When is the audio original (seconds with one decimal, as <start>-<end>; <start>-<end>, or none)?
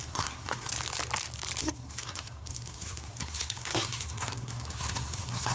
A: 0.7-1.6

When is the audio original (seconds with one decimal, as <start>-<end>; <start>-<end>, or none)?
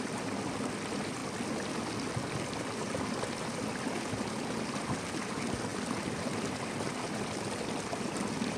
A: 0.0-8.6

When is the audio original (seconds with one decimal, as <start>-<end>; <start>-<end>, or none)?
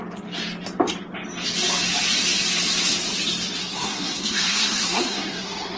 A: 0.0-3.6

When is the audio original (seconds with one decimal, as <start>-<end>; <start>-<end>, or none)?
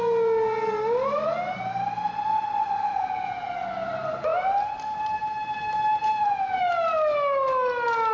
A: 0.0-2.8; 3.5-5.9; 6.6-8.1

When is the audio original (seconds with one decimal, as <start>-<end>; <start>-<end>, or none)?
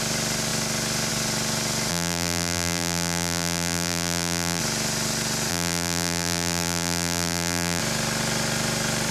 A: 0.0-1.9; 4.6-5.5; 7.8-9.1